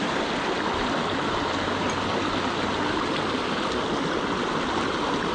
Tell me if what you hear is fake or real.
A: real